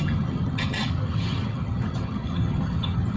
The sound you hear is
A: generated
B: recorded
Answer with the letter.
A